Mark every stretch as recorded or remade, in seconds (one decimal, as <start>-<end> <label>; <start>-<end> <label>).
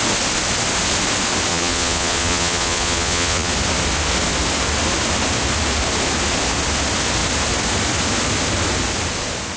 0.0-1.5 recorded; 1.5-3.5 remade; 3.5-9.6 recorded